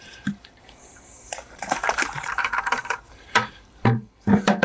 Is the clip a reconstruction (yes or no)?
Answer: yes